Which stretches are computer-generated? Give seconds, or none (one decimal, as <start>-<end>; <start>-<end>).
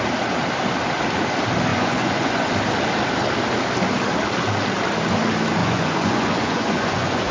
1.7-2.5; 5.6-7.3